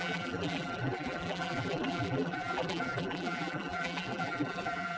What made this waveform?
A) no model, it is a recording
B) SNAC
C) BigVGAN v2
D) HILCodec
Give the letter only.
C